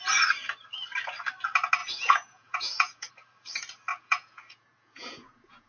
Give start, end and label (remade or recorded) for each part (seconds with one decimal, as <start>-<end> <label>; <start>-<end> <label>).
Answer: 0.0-1.8 recorded; 1.8-3.1 remade; 3.1-3.9 recorded; 3.9-5.7 remade